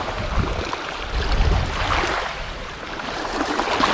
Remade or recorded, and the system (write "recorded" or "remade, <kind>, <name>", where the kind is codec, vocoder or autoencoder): recorded